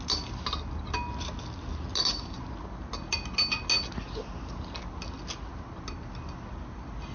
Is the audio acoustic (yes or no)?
yes